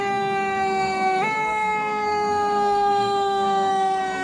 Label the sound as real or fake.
fake